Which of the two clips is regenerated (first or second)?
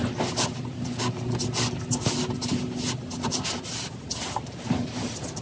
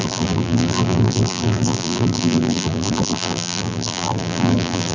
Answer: second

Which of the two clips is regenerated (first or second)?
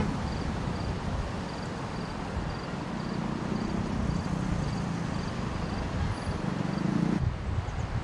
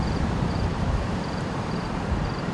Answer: second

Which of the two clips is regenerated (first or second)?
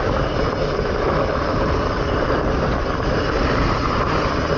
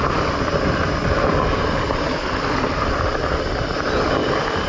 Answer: second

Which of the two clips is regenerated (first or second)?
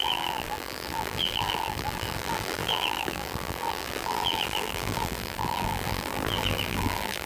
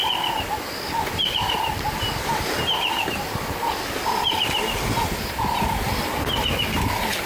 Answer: first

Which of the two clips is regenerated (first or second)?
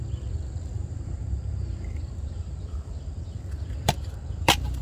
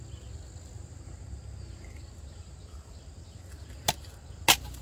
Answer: first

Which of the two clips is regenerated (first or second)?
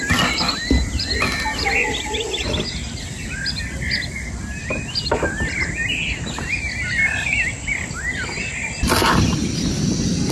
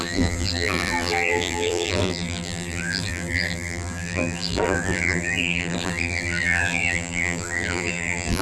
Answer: second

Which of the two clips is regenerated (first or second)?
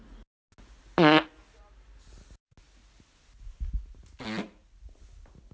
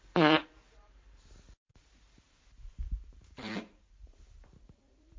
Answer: second